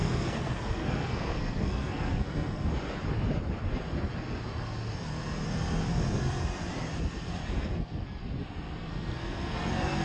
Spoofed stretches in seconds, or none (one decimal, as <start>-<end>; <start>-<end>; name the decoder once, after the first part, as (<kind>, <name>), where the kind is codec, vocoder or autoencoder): 0.0-2.7 (codec, SNAC); 7.5-8.2; 8.9-10.0